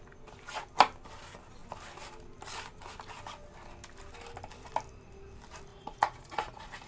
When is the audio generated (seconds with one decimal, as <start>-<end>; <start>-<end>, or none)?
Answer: 5.7-6.9